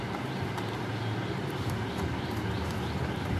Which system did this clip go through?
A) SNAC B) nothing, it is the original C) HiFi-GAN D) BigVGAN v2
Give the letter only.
B